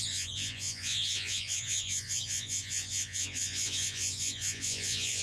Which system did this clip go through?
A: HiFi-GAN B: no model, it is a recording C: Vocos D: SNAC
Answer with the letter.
C